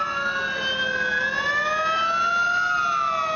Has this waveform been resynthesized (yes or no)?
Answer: no